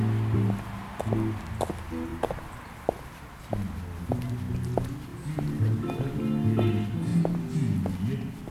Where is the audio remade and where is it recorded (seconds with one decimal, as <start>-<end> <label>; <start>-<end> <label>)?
0.0-2.1 recorded; 2.1-2.6 remade; 2.6-5.1 recorded; 5.1-6.0 remade; 6.0-8.5 recorded